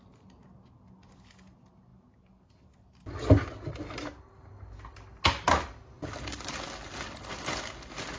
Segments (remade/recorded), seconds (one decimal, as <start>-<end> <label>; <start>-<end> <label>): 0.0-8.2 recorded